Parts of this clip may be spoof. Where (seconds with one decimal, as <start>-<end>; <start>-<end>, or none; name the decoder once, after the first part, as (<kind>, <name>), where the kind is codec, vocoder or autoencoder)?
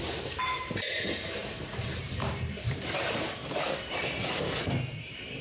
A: 0.0-3.4 (vocoder, BigVGAN v2); 4.0-5.4